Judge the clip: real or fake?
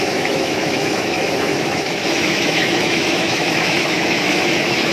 fake